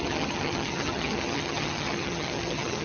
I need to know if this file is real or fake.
fake